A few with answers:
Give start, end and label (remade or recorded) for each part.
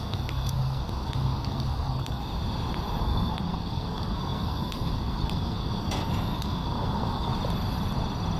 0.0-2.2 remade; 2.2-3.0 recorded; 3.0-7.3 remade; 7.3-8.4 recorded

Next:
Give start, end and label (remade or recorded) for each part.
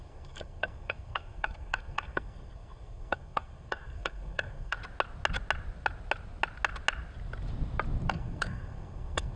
0.0-4.8 remade; 4.8-8.1 recorded; 8.1-9.4 remade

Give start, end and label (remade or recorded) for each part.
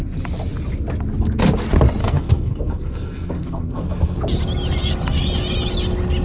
0.0-2.0 recorded; 2.0-4.2 remade; 4.2-6.2 recorded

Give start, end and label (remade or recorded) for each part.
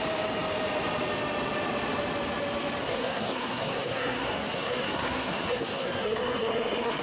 0.0-2.8 recorded; 2.8-7.0 remade